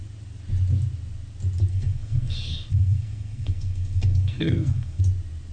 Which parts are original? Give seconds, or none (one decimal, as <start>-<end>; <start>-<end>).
0.0-1.7; 5.0-5.5